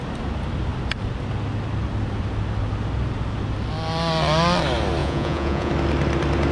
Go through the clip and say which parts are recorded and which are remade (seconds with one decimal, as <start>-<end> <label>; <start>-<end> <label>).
0.0-5.0 recorded; 5.0-5.7 remade; 5.7-6.5 recorded